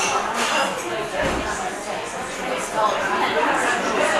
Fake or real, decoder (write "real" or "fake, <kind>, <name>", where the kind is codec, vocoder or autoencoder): fake, vocoder, Vocos